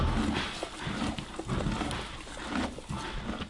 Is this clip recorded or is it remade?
recorded